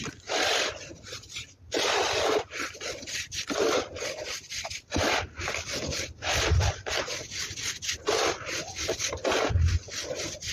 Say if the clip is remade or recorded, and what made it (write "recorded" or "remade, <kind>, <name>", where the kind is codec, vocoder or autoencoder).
recorded